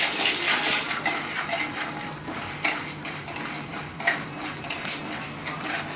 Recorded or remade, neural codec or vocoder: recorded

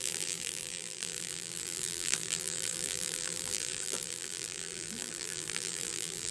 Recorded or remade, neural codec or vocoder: remade, vocoder, BigVGAN v2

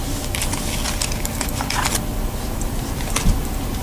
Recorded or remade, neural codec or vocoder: recorded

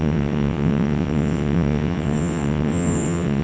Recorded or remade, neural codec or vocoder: remade, vocoder, WaveNeXt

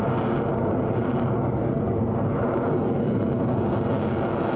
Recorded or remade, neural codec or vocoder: recorded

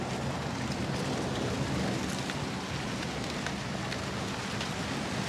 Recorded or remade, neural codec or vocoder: recorded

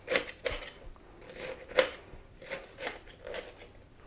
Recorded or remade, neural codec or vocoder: recorded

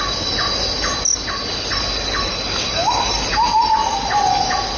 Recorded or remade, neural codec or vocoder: recorded